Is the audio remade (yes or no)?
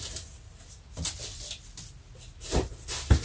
no